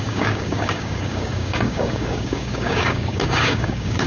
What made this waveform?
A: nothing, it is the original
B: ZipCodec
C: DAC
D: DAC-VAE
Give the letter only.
C